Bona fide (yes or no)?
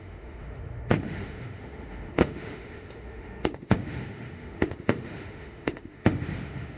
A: no